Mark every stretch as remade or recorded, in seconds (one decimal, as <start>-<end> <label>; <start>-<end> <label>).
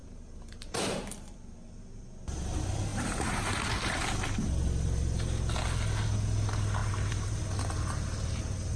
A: 0.0-2.0 remade; 2.0-2.9 recorded; 2.9-3.6 remade; 3.6-6.8 recorded; 6.8-7.4 remade; 7.4-8.8 recorded